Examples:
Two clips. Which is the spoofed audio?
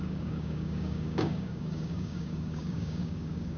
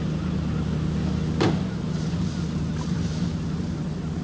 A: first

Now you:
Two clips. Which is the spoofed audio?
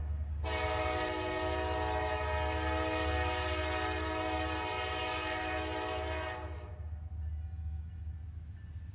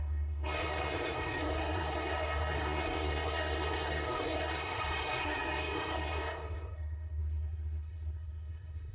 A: second